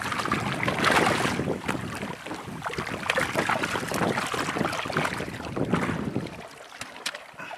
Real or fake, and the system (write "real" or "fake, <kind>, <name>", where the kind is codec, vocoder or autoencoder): real